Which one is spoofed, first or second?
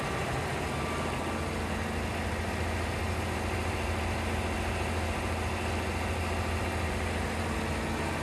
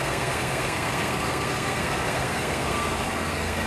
second